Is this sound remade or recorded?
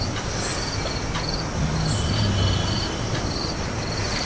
recorded